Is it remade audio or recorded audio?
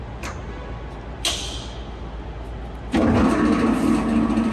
recorded